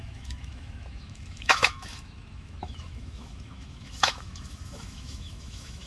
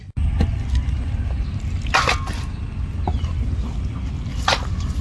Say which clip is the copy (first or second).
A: first